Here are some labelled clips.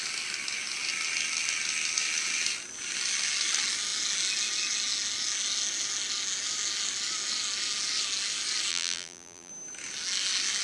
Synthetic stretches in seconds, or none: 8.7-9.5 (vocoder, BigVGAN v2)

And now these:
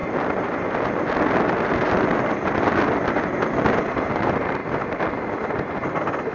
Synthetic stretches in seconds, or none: none